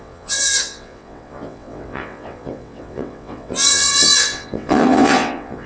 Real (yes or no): no